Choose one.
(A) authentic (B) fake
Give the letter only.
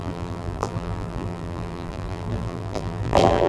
B